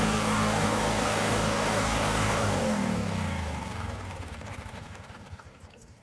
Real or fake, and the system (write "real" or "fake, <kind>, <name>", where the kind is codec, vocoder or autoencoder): fake, codec, DAC